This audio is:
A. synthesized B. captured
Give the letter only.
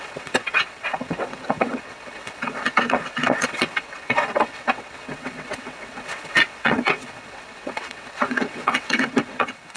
A